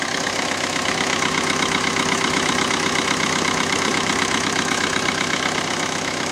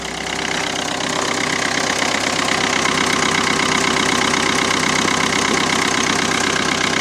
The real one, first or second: second